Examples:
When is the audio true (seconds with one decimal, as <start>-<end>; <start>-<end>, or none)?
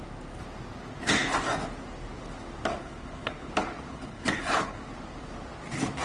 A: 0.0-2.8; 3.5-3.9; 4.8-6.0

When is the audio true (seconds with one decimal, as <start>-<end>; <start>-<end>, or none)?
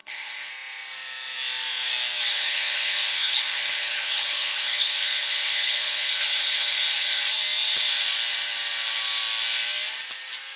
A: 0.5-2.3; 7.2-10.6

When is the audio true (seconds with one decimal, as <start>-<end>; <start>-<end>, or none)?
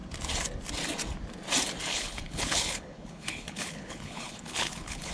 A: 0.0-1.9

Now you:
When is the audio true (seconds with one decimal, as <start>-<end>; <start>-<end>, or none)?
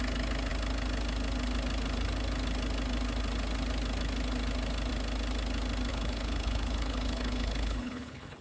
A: 0.0-5.9